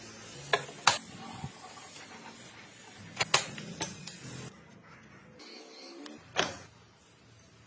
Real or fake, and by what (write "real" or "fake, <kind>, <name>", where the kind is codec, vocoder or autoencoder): real